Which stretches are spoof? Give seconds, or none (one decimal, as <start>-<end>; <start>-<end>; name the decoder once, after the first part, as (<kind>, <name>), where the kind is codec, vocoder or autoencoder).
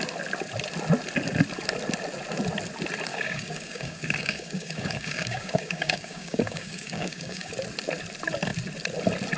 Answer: 3.1-7.5 (codec, DAC)